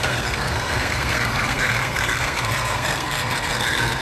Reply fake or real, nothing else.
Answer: fake